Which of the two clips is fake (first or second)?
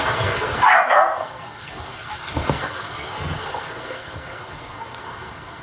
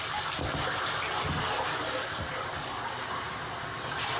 first